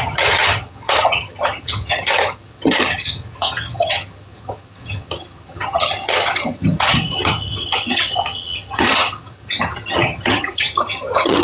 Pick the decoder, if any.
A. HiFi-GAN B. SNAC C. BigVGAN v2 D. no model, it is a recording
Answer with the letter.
A